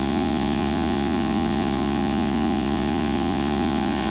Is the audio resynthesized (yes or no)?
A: yes